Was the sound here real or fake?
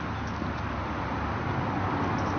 real